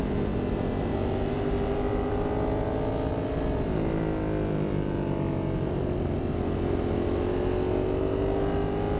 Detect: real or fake real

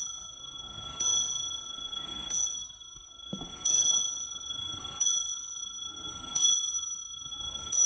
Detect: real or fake fake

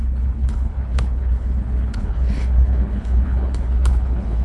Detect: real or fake fake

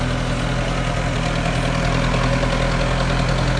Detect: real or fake real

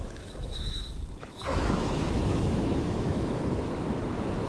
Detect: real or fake fake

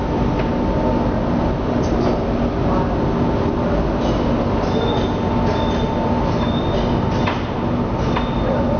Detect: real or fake real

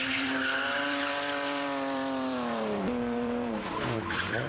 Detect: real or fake fake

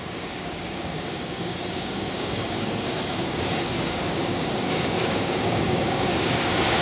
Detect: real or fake fake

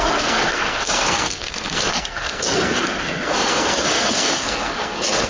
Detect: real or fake fake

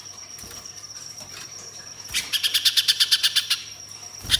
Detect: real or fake fake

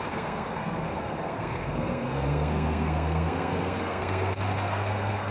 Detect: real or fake fake